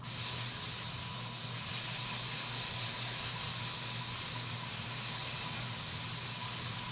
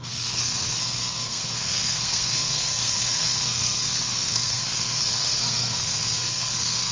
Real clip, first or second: first